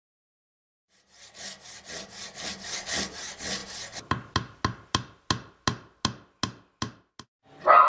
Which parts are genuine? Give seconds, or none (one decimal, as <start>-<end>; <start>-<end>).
0.0-7.9